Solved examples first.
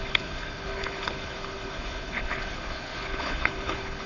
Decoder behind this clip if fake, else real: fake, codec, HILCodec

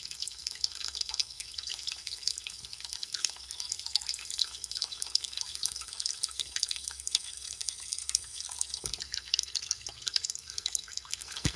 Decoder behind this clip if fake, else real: fake, codec, SNAC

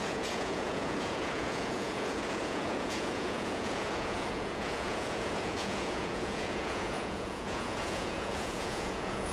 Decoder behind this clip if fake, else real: fake, vocoder, Vocos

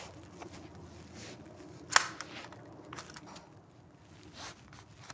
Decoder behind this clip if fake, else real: real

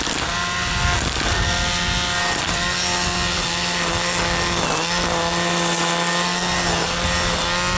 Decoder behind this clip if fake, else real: real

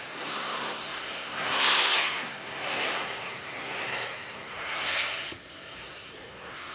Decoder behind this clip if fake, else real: fake, codec, SNAC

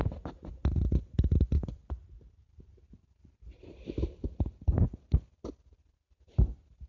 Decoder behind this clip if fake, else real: real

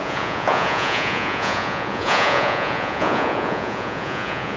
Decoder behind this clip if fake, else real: fake, vocoder, Vocos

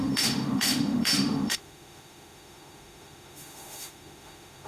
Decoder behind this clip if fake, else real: fake, autoencoder, DAC-VAE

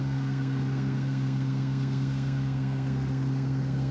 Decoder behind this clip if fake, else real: fake, codec, SNAC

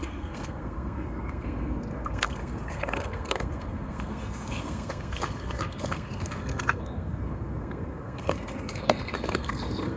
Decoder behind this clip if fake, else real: fake, codec, SNAC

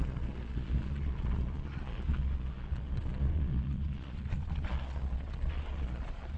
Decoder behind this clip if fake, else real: fake, vocoder, Vocos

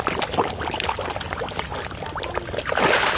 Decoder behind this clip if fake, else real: real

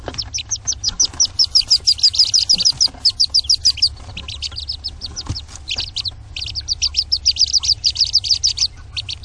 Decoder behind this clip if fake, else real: real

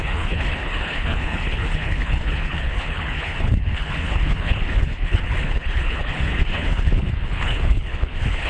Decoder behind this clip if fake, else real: fake, codec, HILCodec